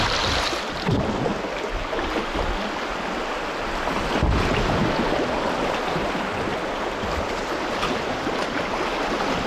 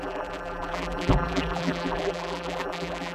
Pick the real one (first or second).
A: first